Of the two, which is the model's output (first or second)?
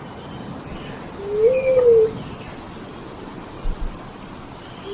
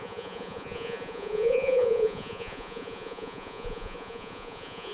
second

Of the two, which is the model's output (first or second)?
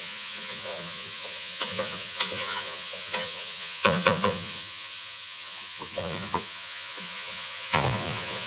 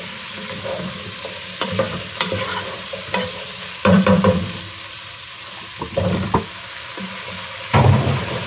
first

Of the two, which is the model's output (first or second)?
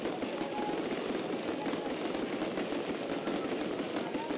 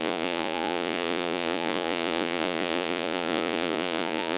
second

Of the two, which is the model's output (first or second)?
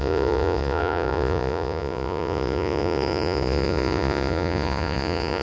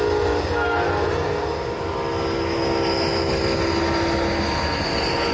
first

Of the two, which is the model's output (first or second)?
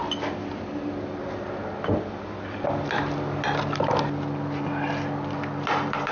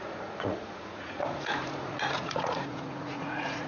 second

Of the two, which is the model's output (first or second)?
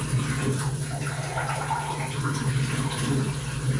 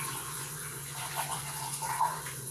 second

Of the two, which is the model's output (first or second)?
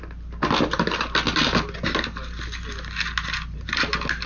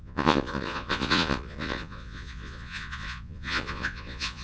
second